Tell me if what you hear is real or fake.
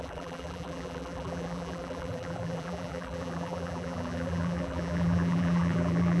fake